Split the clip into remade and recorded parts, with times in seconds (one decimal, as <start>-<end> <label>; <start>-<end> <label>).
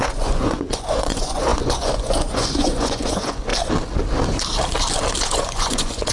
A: 0.0-3.5 remade; 3.5-5.2 recorded; 5.2-6.1 remade